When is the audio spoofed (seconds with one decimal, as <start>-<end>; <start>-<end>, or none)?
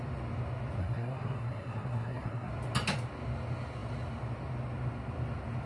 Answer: 0.8-2.5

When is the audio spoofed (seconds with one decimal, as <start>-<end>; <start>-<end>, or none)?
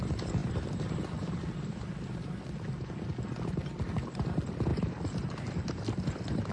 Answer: none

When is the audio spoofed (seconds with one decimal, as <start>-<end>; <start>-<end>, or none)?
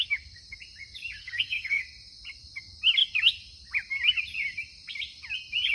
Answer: 1.2-1.8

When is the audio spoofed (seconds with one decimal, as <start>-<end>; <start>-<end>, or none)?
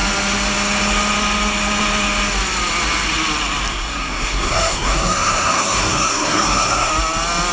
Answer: 3.7-6.9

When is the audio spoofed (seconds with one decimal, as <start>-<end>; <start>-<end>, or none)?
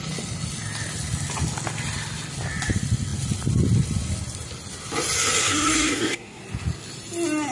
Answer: 5.4-6.4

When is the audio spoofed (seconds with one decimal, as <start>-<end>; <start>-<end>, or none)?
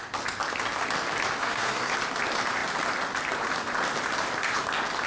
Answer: 1.4-1.9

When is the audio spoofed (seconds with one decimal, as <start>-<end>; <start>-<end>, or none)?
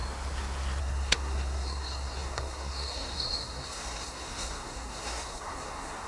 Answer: 0.8-6.1